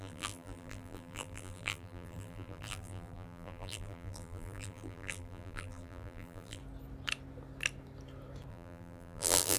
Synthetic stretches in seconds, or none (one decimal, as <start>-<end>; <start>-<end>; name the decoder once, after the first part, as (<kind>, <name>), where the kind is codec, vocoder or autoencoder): 0.0-6.6 (vocoder, BigVGAN v2); 8.5-9.6